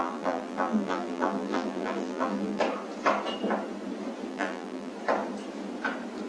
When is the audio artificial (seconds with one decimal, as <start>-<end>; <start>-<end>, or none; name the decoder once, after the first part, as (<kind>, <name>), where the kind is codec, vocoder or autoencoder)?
0.0-2.6 (vocoder, BigVGAN v2); 4.3-4.9